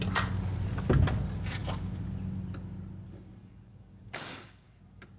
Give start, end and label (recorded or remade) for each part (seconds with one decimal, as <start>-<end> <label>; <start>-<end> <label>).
0.0-3.4 recorded; 3.4-4.8 remade; 4.8-5.2 recorded